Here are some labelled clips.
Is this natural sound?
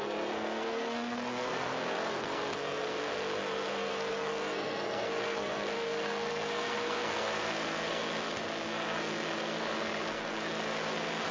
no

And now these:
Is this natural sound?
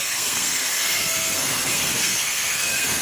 no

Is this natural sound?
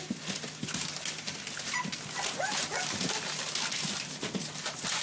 yes